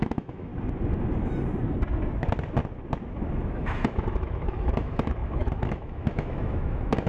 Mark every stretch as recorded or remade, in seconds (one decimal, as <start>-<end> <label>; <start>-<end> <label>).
0.0-0.5 remade; 0.5-3.5 recorded; 3.5-7.1 remade